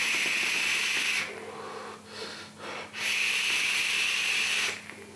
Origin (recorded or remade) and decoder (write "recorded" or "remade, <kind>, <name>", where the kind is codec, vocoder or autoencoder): recorded